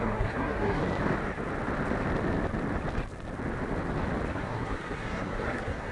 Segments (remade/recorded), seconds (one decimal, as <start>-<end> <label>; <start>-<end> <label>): 0.0-0.8 remade; 0.8-4.3 recorded; 4.3-5.9 remade